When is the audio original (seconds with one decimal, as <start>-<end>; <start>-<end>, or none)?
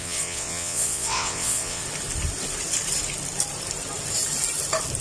1.8-5.0